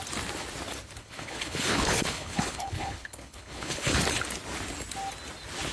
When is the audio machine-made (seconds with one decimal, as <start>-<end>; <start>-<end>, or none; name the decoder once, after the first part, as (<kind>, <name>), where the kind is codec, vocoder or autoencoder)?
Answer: 1.0-4.0 (codec, HILCodec)

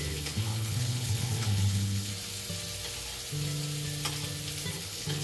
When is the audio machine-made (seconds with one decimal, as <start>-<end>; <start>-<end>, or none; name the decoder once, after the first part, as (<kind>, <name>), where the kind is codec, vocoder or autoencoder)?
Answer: 0.0-2.1 (codec, HILCodec); 4.7-5.2

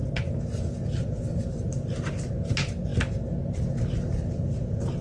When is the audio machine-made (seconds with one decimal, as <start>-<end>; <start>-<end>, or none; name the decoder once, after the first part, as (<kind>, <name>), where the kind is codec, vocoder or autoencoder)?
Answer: none

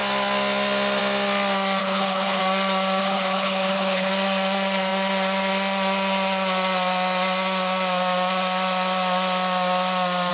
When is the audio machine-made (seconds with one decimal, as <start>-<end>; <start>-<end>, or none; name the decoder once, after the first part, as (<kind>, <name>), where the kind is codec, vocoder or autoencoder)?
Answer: 1.8-2.4 (codec, HILCodec); 3.0-4.1

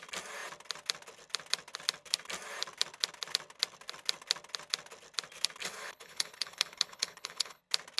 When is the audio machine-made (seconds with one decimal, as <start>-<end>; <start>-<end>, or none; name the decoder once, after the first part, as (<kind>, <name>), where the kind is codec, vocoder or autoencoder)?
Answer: 5.6-7.6 (codec, HILCodec)